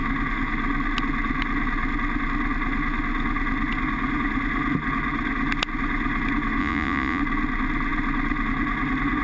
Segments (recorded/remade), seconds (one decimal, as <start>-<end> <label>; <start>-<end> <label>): 0.0-6.6 recorded; 6.6-7.2 remade; 7.2-9.2 recorded